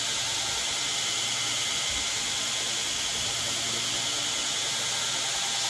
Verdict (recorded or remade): recorded